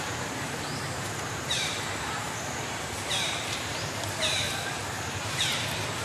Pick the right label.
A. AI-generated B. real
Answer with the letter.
A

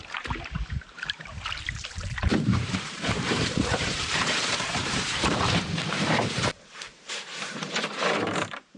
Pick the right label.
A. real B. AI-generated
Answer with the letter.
B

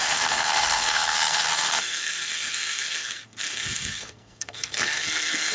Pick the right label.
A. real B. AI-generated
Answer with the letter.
B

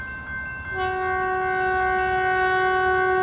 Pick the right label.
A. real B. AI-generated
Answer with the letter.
A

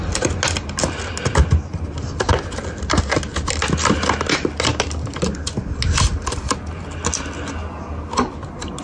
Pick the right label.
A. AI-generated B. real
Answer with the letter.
B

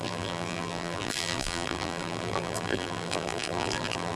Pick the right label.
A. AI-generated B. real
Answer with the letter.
A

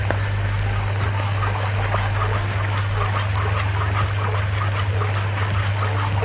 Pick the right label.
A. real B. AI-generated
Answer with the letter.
A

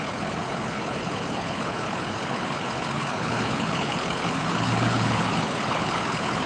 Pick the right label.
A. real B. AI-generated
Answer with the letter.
B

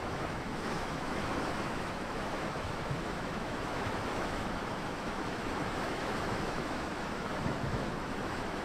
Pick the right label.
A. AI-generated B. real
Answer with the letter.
A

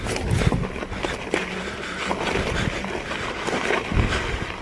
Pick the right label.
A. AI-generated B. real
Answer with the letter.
B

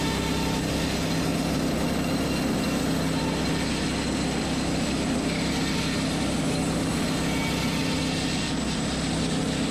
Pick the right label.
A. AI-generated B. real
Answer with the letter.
B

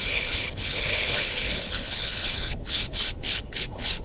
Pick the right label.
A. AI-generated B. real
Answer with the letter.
A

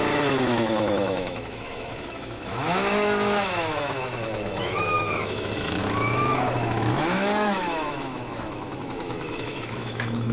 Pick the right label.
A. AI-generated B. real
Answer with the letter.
A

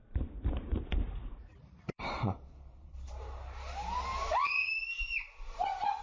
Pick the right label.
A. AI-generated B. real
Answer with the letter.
A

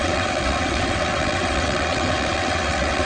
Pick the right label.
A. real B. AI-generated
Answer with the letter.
B